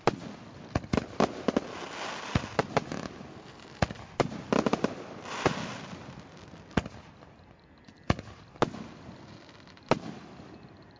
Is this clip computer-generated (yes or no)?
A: no